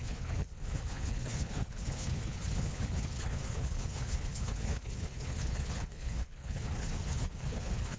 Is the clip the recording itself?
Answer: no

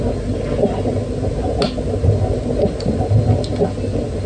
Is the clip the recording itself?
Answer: yes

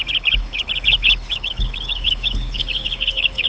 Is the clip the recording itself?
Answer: no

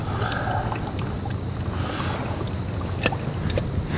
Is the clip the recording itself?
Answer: yes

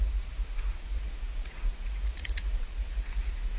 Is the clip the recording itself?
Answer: no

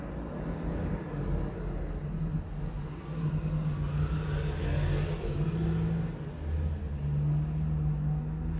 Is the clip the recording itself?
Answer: yes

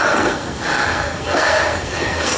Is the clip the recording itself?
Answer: no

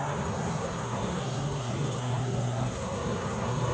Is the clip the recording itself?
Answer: no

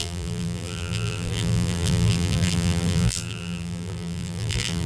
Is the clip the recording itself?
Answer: no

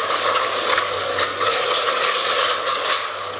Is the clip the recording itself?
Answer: no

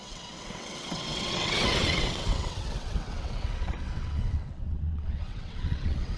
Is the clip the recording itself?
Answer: no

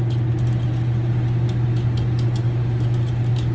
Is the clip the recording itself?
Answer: yes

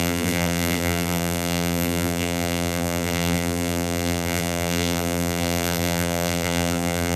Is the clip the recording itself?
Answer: no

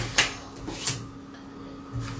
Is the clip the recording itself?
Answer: yes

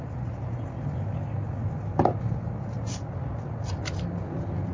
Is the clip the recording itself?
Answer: yes